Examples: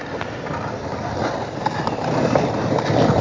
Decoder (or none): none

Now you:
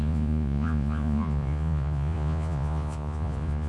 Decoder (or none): vocoder, Vocos